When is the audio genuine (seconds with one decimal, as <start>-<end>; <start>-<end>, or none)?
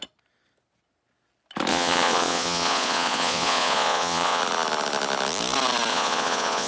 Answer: 0.0-1.7; 4.4-5.9